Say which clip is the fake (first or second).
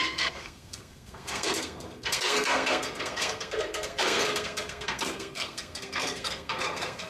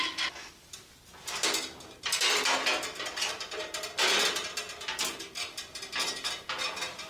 first